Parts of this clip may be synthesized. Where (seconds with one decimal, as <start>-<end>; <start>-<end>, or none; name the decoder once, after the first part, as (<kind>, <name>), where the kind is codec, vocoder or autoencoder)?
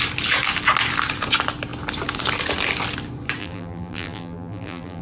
3.4-5.0 (vocoder, BigVGAN v2)